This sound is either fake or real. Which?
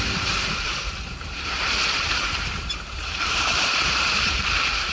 fake